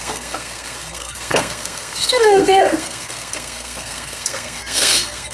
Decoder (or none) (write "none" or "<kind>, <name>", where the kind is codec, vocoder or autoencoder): codec, SNAC